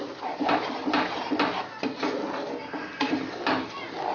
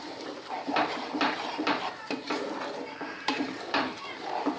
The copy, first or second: second